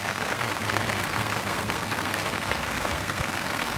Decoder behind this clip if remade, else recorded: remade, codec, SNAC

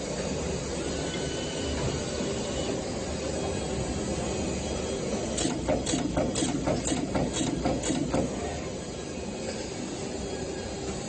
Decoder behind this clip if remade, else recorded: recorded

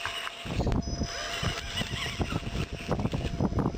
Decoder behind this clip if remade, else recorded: recorded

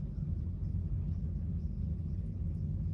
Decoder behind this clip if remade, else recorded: recorded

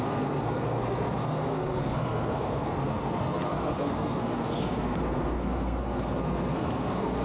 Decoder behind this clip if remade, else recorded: remade, codec, SNAC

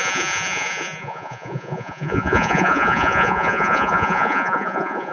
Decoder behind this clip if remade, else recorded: remade, vocoder, Vocos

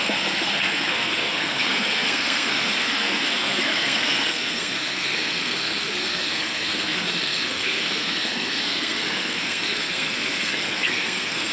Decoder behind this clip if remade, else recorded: remade, codec, SNAC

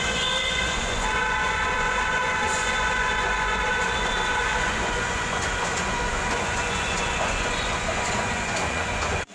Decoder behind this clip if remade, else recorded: remade, vocoder, Vocos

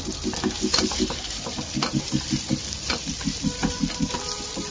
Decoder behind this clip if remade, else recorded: recorded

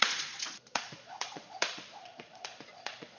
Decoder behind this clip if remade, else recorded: remade, vocoder, Vocos